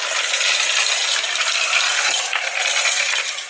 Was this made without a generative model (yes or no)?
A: yes